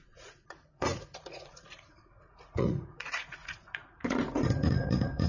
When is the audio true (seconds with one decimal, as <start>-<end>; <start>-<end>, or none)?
none

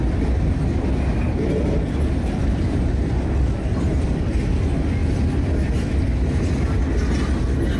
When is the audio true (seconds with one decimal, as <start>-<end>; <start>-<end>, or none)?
0.0-7.8